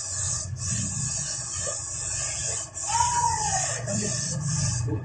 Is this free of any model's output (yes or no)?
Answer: no